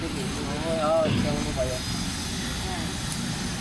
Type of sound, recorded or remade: recorded